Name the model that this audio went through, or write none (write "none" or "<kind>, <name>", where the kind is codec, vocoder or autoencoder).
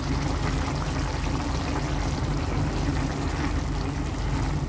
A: none